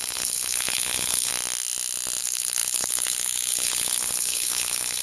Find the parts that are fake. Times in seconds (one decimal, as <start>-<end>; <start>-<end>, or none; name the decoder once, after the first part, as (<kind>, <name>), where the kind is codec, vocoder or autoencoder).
0.0-1.3 (codec, HILCodec); 2.2-5.0